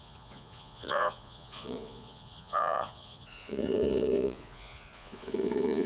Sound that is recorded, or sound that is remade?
remade